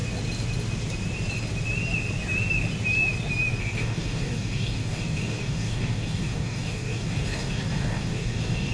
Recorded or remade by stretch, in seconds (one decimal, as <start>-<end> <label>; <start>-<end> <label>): 0.0-3.6 recorded; 3.6-8.7 remade